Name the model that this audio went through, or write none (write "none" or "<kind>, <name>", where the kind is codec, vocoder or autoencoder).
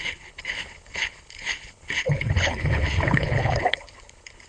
codec, HILCodec